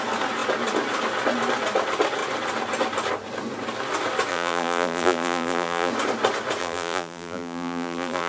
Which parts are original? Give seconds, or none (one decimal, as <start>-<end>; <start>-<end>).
0.0-4.3; 5.9-6.6